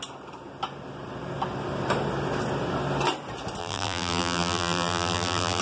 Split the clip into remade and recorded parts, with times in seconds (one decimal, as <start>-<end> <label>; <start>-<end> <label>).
0.0-3.6 recorded; 3.6-5.6 remade